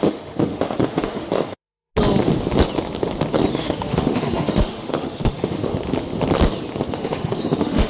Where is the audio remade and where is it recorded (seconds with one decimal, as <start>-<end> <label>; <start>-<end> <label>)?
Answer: 0.0-1.9 remade; 1.9-3.5 recorded; 3.5-5.7 remade; 5.7-6.9 recorded; 6.9-7.9 remade